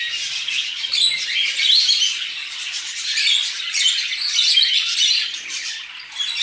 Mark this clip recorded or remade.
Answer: recorded